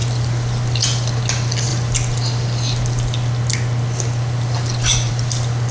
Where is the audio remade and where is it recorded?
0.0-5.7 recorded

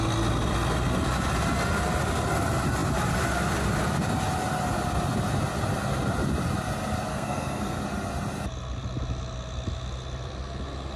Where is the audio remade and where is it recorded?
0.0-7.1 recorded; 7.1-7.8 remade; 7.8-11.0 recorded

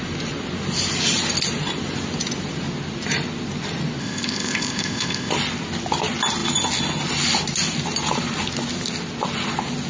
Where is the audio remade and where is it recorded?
0.0-4.0 recorded; 4.0-5.3 remade; 5.3-9.9 recorded